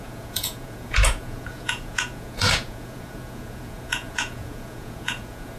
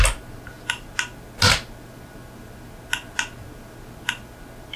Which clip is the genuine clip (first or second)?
second